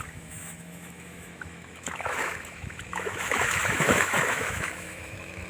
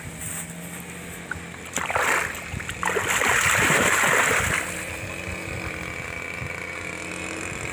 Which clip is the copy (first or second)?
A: first